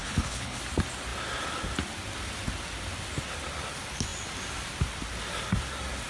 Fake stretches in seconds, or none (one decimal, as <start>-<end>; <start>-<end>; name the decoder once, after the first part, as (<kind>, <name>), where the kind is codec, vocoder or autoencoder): 0.0-0.6 (codec, HILCodec)